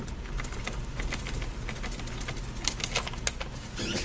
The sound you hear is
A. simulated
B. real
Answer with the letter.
B